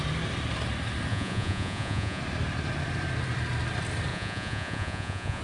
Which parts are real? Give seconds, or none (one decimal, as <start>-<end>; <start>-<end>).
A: 0.0-1.1; 2.2-4.1